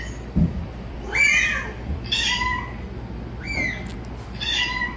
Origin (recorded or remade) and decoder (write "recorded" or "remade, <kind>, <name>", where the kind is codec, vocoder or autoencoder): recorded